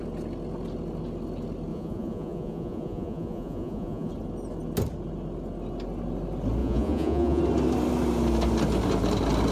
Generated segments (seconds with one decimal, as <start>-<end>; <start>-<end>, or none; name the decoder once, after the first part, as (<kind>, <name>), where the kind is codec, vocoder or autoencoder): 1.7-4.1 (vocoder, Vocos); 6.6-7.4